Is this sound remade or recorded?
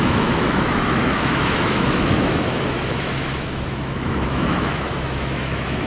remade